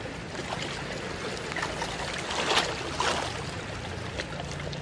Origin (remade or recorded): recorded